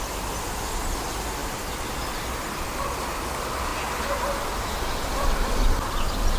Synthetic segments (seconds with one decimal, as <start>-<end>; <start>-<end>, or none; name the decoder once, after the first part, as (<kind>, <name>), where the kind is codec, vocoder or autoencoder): none